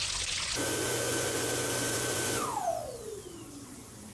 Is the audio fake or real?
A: fake